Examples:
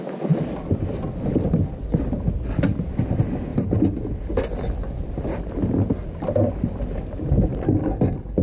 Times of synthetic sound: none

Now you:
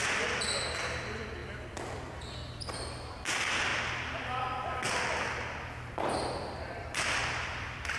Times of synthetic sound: 0.0-3.7; 5.9-8.0